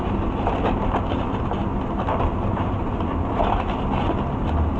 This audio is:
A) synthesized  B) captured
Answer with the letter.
B